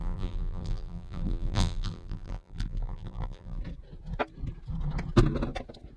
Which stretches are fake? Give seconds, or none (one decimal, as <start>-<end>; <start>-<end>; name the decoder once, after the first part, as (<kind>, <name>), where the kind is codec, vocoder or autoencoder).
0.0-3.6 (vocoder, BigVGAN v2)